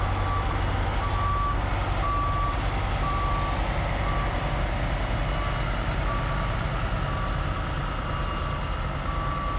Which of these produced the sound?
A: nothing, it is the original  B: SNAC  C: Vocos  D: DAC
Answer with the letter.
A